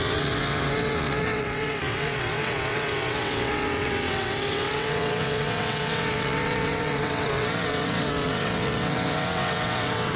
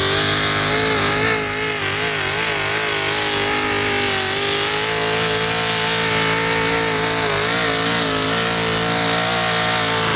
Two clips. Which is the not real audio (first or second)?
first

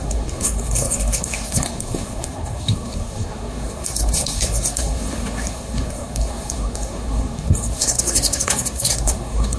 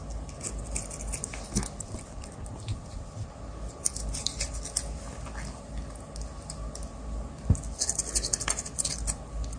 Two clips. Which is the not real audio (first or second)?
first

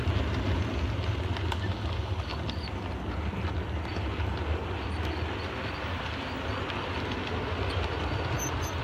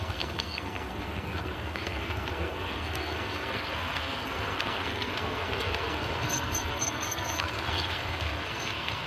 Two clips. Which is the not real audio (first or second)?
second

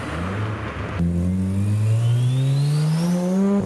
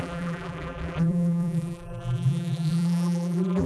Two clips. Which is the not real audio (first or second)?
second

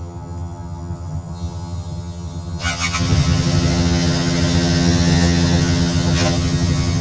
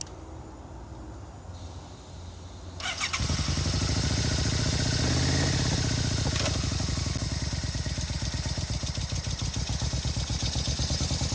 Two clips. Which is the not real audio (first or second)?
first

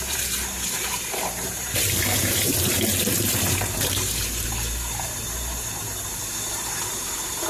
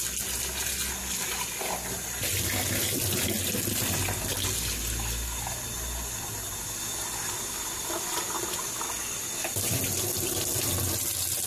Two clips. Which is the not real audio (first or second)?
first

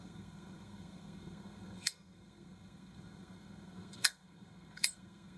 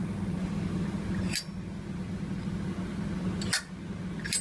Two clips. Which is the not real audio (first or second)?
first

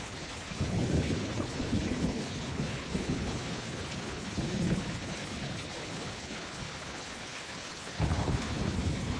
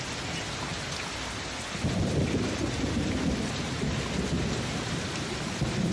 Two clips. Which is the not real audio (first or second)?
first